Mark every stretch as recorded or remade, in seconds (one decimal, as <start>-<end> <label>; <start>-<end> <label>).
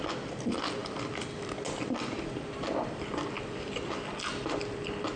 0.0-5.2 recorded